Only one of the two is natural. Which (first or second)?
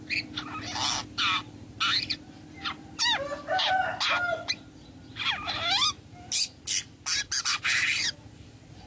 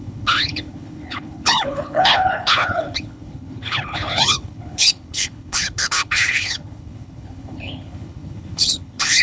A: first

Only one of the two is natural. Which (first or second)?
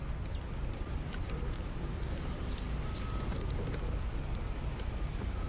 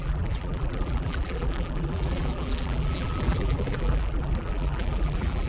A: first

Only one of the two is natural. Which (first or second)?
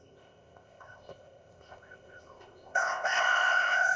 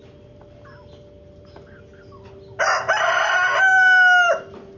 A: second